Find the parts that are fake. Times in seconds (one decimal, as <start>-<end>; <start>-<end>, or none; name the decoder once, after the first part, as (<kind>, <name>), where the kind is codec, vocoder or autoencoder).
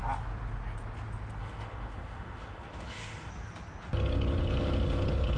1.4-3.3 (autoencoder, DAC-VAE)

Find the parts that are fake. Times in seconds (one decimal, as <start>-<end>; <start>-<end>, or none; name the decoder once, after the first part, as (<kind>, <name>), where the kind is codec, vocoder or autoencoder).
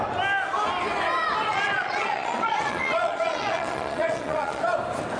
1.5-4.6 (vocoder, Vocos)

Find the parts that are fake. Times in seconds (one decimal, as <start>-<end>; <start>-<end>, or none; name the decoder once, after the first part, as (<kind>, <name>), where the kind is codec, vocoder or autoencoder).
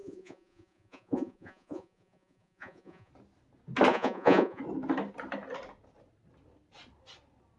0.0-3.1 (vocoder, Vocos); 3.9-4.6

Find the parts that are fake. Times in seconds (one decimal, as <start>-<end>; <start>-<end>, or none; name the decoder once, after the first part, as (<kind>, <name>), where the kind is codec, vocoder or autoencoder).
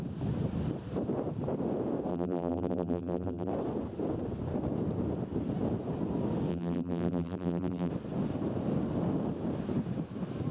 2.1-3.5 (vocoder, BigVGAN v2); 6.5-7.9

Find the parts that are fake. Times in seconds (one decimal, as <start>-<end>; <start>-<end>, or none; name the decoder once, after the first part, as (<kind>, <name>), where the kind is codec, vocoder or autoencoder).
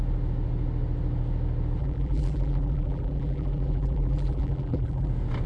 1.8-5.1 (vocoder, BigVGAN v2)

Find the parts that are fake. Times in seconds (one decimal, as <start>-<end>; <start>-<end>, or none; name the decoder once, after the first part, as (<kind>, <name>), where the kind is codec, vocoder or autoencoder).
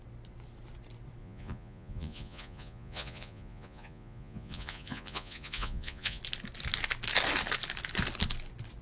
1.2-6.2 (vocoder, Vocos)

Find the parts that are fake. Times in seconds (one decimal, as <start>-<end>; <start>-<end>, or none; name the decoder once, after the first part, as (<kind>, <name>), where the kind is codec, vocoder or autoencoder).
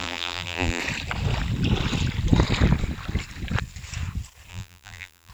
0.0-0.8 (vocoder, BigVGAN v2); 4.5-5.3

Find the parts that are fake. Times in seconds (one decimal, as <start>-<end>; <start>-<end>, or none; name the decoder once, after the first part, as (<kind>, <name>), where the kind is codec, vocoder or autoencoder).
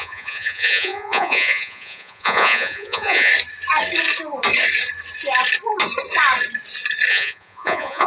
0.0-3.3 (vocoder, Vocos); 7.1-8.1